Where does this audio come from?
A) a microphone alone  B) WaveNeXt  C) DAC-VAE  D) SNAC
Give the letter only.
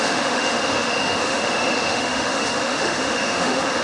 C